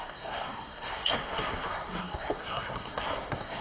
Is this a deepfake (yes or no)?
yes